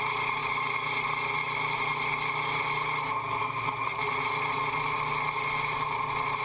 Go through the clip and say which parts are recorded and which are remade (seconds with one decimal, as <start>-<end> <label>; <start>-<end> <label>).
0.0-6.4 recorded